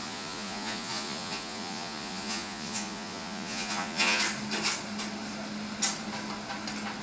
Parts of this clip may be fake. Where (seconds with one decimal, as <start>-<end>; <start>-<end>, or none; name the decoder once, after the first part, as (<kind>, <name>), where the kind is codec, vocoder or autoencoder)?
0.0-4.2 (vocoder, Vocos)